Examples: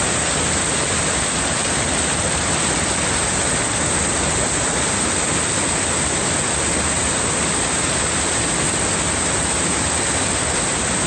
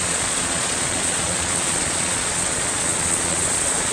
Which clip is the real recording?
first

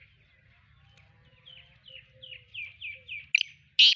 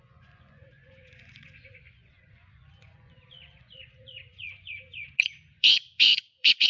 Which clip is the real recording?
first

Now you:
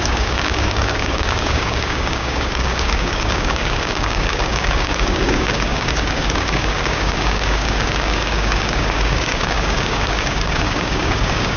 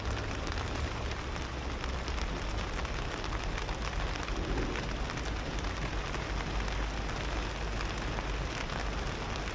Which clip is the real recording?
second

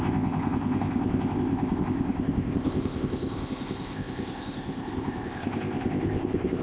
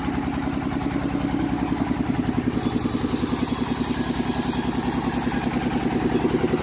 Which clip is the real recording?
second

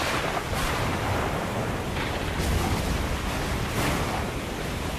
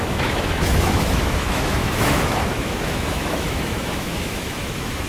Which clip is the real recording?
first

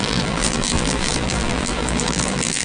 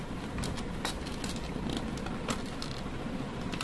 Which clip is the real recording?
second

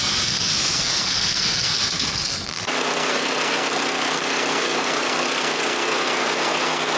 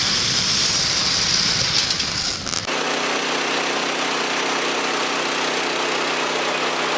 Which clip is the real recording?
second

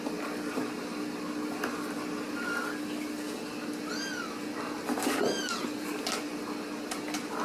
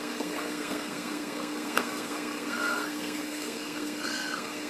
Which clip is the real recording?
first